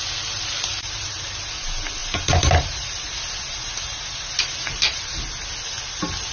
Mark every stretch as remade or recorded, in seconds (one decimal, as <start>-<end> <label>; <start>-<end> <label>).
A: 0.0-0.7 recorded; 0.7-1.4 remade; 1.4-2.0 recorded; 2.0-5.2 remade; 5.2-6.3 recorded